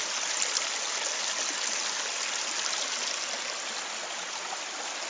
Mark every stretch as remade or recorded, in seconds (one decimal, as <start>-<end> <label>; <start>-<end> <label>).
0.0-5.1 recorded